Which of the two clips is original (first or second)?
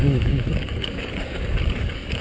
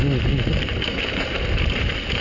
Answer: second